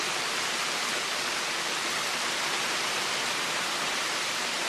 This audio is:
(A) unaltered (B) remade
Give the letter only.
A